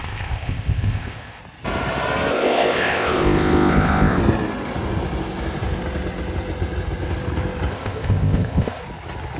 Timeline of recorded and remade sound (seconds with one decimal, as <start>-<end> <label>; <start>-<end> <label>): 0.0-1.4 remade; 1.4-2.3 recorded; 2.3-4.2 remade; 4.2-7.7 recorded; 7.7-8.8 remade; 8.8-9.4 recorded